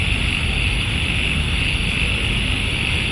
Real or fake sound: real